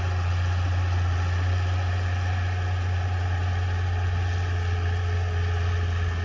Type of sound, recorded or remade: recorded